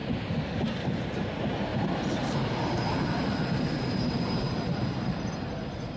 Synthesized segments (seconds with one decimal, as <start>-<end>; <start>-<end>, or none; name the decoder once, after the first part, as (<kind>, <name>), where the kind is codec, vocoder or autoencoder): 1.7-5.3 (vocoder, BigVGAN v2)